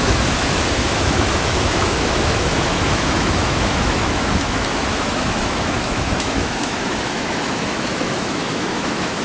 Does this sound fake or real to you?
fake